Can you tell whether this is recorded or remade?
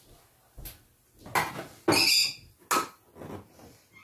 recorded